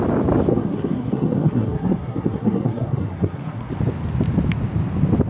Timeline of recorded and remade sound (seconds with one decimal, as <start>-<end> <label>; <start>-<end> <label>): 0.0-0.5 recorded; 0.5-3.7 remade; 3.7-5.3 recorded